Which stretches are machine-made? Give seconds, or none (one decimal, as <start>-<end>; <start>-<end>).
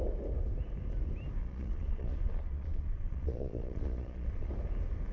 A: 1.4-4.5